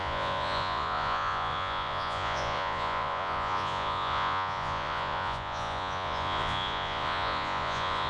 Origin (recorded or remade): remade